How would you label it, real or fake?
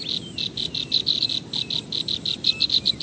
real